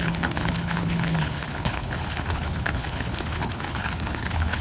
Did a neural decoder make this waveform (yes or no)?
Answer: yes